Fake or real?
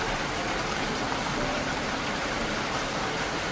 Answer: fake